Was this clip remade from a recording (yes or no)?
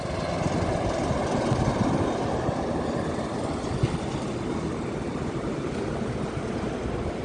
no